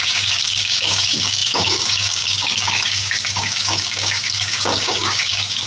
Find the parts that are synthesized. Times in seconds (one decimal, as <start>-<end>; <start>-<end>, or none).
0.0-5.7